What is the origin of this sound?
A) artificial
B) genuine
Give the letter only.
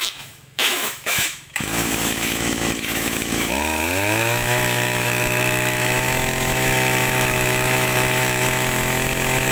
A